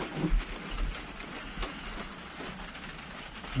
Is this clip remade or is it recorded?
recorded